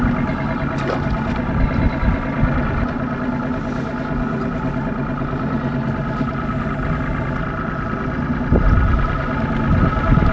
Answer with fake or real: real